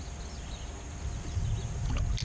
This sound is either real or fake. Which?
real